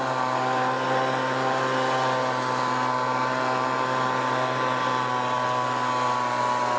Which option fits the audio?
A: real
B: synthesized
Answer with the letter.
A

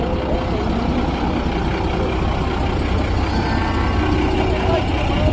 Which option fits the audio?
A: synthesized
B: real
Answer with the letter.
B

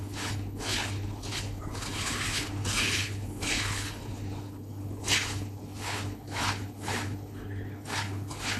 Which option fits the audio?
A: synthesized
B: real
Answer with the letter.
A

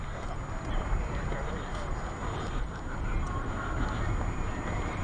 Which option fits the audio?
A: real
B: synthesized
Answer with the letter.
A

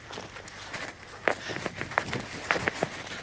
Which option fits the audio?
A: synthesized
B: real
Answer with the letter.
B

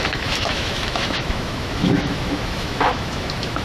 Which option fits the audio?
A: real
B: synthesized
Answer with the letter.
B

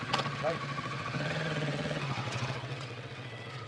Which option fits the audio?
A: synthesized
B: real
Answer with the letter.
A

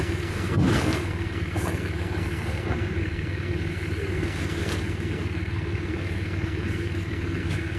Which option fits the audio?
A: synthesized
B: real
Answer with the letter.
A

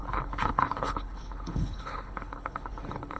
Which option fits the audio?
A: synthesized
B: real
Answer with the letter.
A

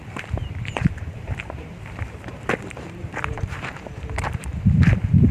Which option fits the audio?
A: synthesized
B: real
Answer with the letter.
A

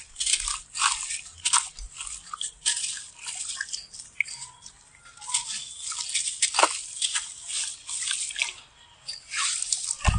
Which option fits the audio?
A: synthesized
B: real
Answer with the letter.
B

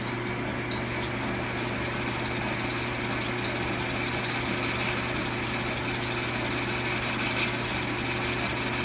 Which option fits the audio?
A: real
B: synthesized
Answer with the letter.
A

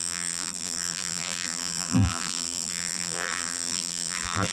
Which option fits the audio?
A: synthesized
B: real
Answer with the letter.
A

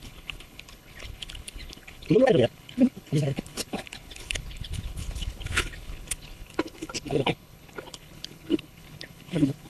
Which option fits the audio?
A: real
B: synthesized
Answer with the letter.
B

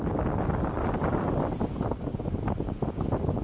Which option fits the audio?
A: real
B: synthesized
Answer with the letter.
A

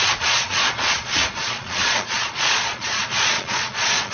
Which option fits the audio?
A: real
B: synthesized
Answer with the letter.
B